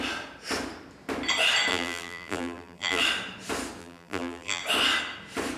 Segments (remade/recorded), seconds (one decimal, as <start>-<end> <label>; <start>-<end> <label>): 0.0-1.7 recorded; 1.7-3.0 remade; 3.0-3.8 recorded; 3.8-4.6 remade; 4.6-5.6 recorded